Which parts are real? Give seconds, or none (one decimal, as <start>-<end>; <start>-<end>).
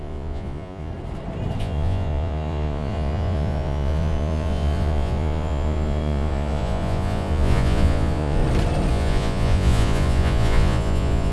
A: 0.9-1.6; 8.4-8.9